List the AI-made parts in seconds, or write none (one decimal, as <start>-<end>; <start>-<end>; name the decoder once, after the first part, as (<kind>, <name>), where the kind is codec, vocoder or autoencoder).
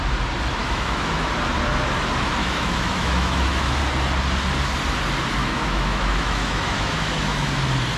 0.6-1.3 (autoencoder, DAC-VAE); 2.4-3.8; 5.4-7.5